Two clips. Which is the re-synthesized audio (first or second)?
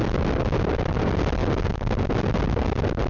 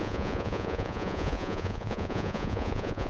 second